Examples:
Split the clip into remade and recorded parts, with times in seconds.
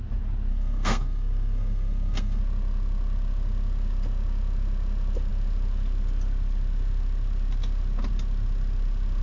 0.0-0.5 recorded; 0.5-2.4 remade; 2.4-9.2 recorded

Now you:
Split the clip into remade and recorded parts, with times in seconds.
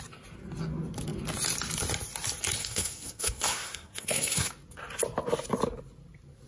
0.0-2.6 recorded; 2.6-4.5 remade; 4.5-6.5 recorded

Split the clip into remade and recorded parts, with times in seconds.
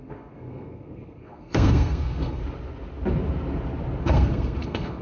0.0-2.4 remade; 2.4-4.0 recorded; 4.0-5.0 remade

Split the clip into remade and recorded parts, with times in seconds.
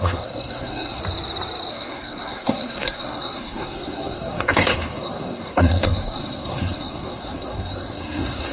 0.0-1.0 remade; 1.0-1.7 recorded; 1.7-8.5 remade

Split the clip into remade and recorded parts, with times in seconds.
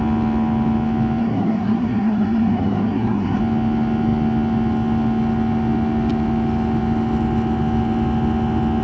0.0-1.2 recorded; 1.2-3.4 remade; 3.4-8.8 recorded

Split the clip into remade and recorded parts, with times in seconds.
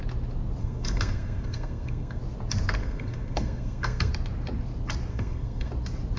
0.0-0.6 recorded; 0.6-2.2 remade; 2.2-2.8 recorded; 2.8-4.1 remade; 4.1-5.1 recorded; 5.1-5.7 remade; 5.7-6.2 recorded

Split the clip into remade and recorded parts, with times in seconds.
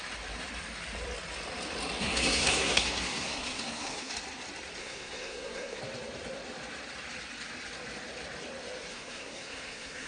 0.0-2.0 recorded; 2.0-4.1 remade; 4.1-4.8 recorded; 4.8-5.8 remade; 5.8-8.9 recorded; 8.9-10.1 remade